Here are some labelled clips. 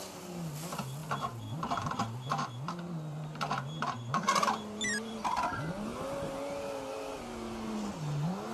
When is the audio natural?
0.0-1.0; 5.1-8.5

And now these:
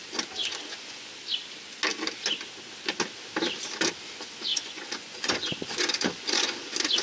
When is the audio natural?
0.0-0.4; 1.1-4.5

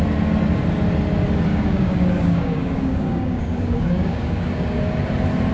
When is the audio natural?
0.0-1.5; 4.8-5.5

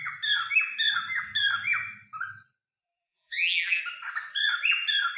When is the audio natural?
0.0-2.8; 3.8-5.2

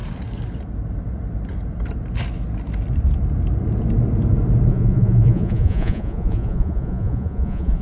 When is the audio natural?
0.0-4.7

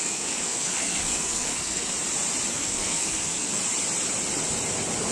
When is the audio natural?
1.9-2.5; 3.6-5.1

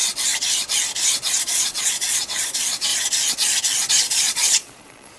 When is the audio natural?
0.0-1.4; 2.9-3.9